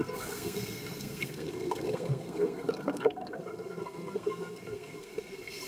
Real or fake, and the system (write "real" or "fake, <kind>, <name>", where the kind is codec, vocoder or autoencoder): fake, codec, SNAC